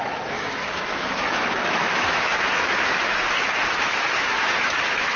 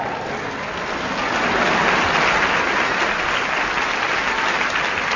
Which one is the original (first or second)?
second